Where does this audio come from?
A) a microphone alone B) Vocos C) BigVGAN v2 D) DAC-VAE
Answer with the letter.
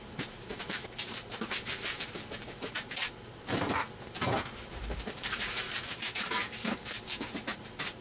C